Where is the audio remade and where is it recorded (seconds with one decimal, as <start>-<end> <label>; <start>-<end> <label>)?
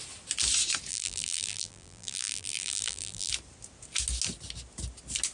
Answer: 0.0-0.9 recorded; 0.9-3.3 remade; 3.3-5.3 recorded